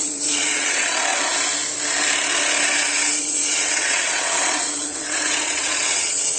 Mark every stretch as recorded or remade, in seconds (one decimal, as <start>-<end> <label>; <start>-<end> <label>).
0.0-1.1 remade; 1.1-3.2 recorded; 3.2-6.4 remade